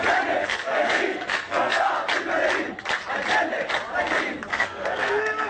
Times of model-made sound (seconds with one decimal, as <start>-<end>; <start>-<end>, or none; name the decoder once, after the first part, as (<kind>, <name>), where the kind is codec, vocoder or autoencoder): 0.4-1.9 (codec, SNAC); 4.5-5.5